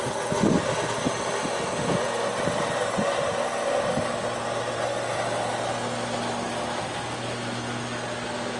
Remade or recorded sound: recorded